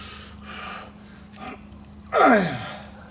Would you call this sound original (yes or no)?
yes